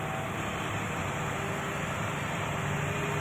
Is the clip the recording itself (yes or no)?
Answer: yes